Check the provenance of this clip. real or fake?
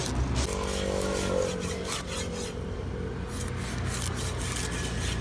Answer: real